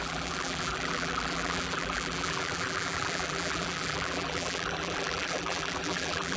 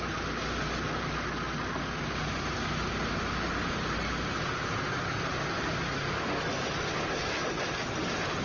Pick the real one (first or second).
second